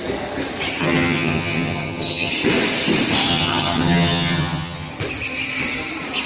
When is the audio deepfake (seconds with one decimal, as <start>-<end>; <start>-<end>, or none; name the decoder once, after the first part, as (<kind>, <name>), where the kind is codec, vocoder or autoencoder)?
0.8-2.3 (vocoder, HiFi-GAN); 3.3-4.9